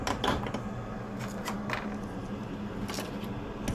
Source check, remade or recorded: recorded